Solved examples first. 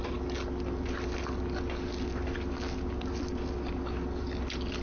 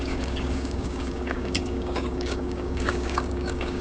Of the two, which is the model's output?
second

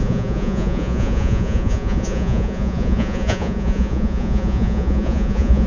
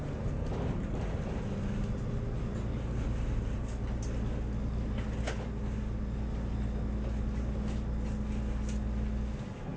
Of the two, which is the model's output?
first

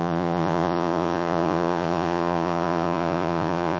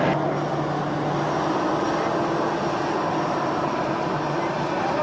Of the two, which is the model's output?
first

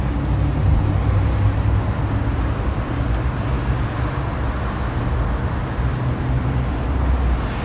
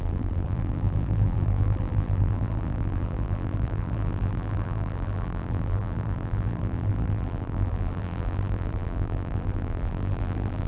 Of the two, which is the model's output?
second